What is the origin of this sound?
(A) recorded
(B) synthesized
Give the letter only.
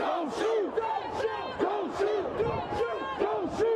A